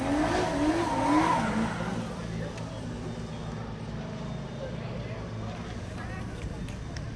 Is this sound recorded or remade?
recorded